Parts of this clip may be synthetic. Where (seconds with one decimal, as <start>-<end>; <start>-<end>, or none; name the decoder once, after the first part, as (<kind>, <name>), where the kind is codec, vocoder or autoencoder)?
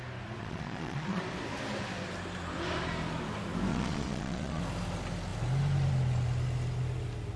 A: 0.4-1.2 (vocoder, Vocos); 3.7-4.6